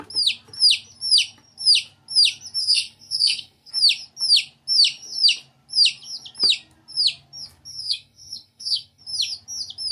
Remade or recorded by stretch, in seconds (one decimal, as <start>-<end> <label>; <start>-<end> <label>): 0.0-2.6 recorded; 2.6-3.7 remade; 3.7-7.7 recorded; 7.7-9.0 remade; 9.0-9.9 recorded